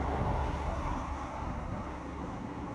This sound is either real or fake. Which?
fake